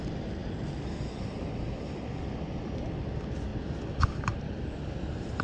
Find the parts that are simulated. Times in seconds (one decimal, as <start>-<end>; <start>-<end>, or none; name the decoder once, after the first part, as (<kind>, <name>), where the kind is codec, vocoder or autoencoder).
none